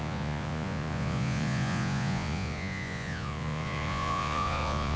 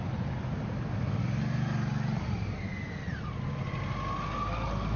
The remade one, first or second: first